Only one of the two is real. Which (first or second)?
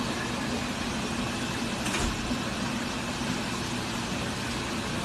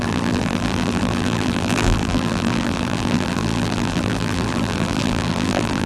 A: first